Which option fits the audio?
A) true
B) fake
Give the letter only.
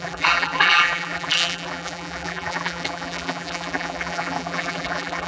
B